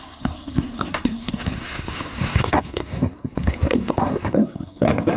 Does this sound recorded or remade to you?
remade